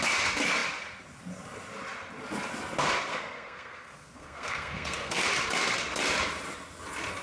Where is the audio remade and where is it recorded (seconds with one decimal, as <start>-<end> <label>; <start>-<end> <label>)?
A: 0.0-3.1 recorded; 3.1-5.2 remade; 5.2-7.2 recorded